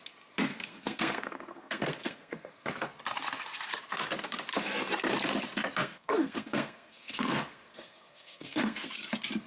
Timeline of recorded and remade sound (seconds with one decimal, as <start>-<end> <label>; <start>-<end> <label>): 0.0-0.5 recorded; 0.5-2.7 remade; 2.7-5.8 recorded; 5.8-8.9 remade; 8.9-9.5 recorded